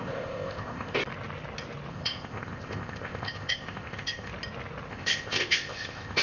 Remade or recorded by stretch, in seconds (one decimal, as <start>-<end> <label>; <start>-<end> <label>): 0.0-1.0 remade; 1.0-1.9 recorded; 1.9-4.3 remade; 4.3-4.9 recorded; 4.9-6.2 remade